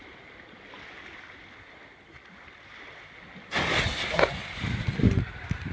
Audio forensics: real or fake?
real